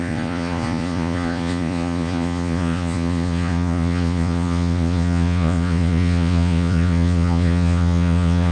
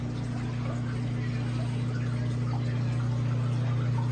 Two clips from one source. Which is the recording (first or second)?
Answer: second